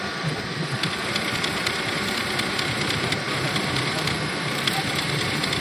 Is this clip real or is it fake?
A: fake